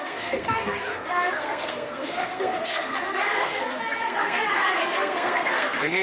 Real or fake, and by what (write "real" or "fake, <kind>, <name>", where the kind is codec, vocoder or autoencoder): fake, codec, SNAC